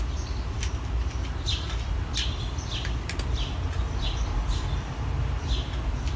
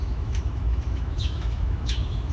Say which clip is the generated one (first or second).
second